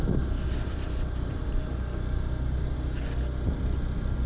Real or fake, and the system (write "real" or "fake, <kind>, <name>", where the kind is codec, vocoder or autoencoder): real